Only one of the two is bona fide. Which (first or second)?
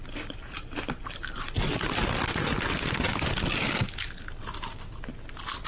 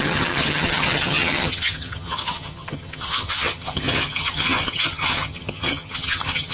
first